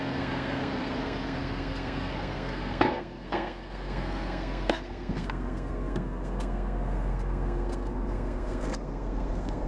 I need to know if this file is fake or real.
fake